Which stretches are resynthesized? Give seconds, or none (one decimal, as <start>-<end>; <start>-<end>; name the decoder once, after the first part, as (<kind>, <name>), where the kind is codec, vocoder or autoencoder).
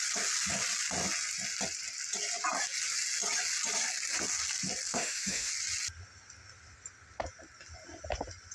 4.9-5.5 (autoencoder, DAC-VAE)